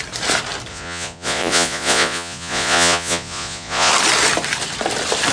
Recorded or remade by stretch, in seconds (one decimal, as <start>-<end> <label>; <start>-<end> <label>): 0.0-0.7 recorded; 0.7-3.9 remade; 3.9-5.3 recorded